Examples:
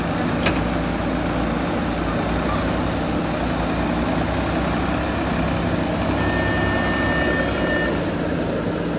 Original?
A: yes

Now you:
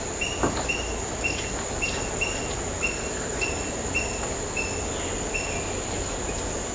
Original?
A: yes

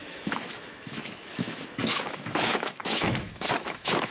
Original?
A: no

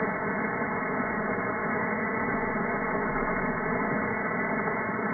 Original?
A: no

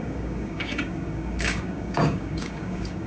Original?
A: no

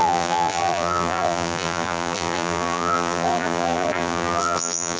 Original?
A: no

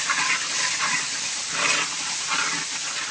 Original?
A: yes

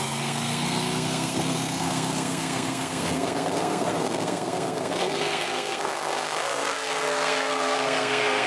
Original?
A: no